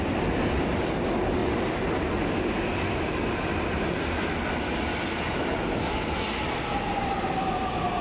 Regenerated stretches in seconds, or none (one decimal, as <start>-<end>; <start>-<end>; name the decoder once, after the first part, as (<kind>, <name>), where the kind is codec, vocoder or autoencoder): none